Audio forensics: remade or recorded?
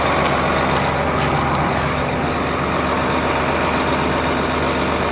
recorded